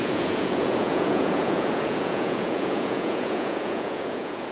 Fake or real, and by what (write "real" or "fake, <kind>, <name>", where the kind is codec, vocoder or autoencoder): fake, vocoder, Vocos